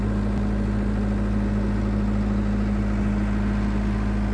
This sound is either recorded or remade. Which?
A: recorded